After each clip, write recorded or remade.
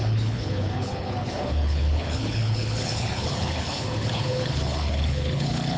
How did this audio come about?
remade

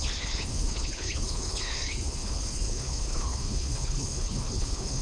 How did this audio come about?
remade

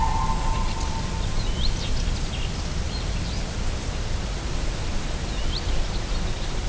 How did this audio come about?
recorded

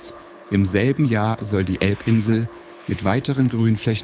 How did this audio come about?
remade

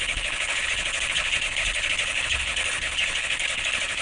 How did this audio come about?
remade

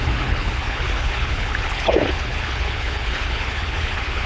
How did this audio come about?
remade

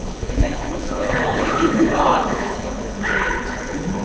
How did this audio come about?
remade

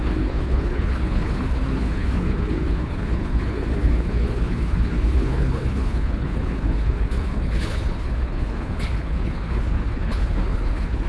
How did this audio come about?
remade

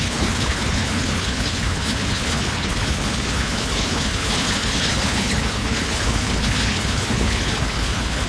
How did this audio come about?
remade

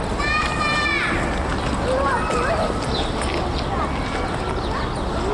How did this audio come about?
recorded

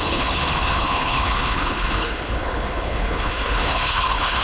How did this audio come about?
remade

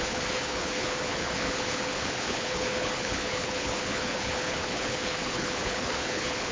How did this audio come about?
remade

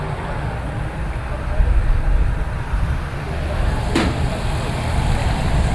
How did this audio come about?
recorded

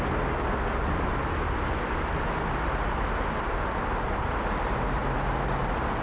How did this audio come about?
recorded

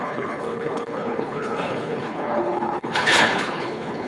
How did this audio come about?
remade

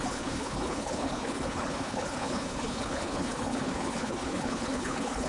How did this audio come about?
remade